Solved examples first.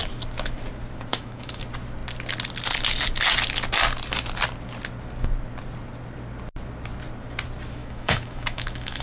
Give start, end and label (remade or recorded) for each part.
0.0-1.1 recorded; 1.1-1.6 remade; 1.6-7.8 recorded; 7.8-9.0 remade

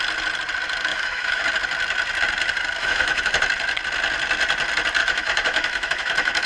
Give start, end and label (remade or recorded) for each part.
0.0-0.9 recorded; 0.9-1.4 remade; 1.4-2.8 recorded; 2.8-3.3 remade; 3.3-5.0 recorded; 5.0-6.5 remade

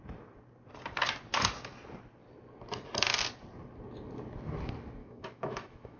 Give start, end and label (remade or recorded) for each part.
0.0-5.0 recorded; 5.0-6.0 remade